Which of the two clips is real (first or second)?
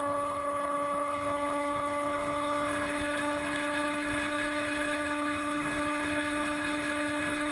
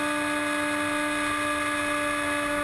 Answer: second